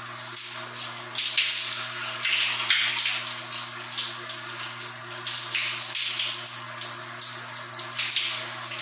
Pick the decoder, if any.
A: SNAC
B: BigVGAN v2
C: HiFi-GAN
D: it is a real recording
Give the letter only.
D